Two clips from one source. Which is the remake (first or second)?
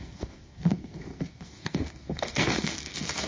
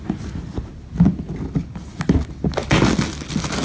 first